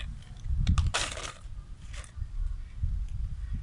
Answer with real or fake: real